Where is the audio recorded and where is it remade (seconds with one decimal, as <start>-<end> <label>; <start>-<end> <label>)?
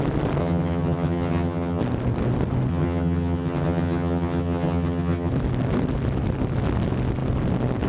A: 0.0-0.4 recorded; 0.4-1.8 remade; 1.8-2.7 recorded; 2.7-5.3 remade; 5.3-7.9 recorded